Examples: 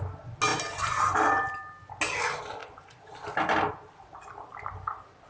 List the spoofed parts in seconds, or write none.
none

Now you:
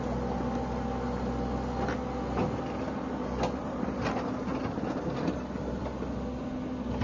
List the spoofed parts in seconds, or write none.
none